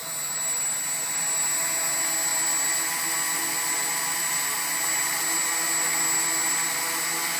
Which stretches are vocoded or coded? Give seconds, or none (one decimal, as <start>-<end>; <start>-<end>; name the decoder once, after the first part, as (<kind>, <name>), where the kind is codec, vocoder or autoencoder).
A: none